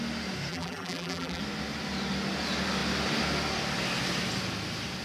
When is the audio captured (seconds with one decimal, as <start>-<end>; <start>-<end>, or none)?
0.0-0.5; 1.4-5.0